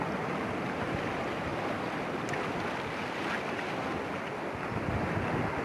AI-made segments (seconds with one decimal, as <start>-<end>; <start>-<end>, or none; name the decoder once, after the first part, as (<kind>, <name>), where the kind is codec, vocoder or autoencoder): none